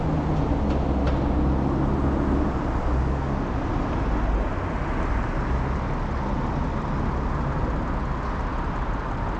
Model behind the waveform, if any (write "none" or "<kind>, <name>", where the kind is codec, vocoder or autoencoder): none